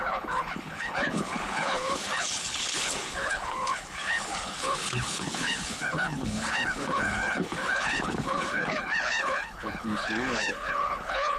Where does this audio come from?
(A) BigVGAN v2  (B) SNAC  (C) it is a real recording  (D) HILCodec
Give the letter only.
D